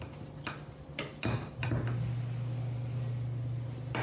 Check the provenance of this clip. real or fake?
real